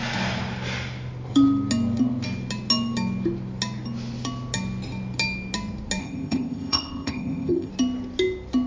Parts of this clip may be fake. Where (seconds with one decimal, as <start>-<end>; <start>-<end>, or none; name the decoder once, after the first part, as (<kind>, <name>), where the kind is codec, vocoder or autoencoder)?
6.0-7.7 (codec, ZipCodec)